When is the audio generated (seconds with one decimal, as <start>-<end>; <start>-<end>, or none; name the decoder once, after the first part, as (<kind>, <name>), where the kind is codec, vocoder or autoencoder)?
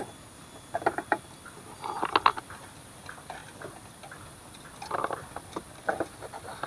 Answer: none